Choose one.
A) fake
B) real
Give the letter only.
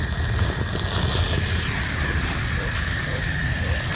B